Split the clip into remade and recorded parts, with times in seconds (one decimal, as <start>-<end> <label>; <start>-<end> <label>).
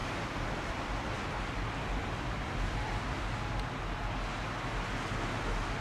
0.0-3.5 remade; 3.5-5.8 recorded